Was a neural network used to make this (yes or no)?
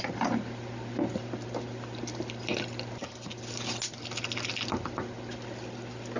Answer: no